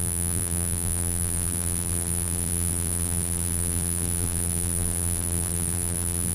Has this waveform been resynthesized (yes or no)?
yes